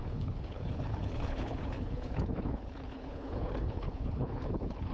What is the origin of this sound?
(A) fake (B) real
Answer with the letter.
A